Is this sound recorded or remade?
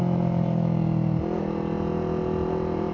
recorded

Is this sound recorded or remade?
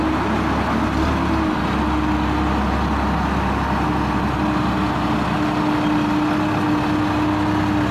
recorded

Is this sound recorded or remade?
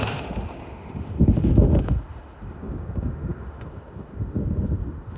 remade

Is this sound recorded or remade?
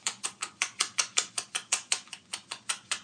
remade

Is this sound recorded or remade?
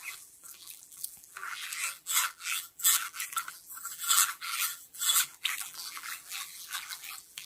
remade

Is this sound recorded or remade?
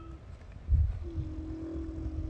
recorded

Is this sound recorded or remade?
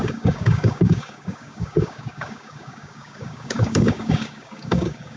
remade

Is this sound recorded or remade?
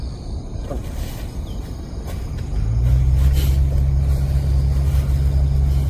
recorded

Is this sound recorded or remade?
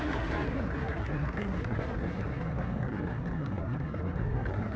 remade